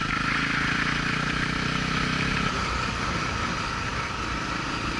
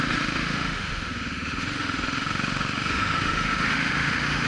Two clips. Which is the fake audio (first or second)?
second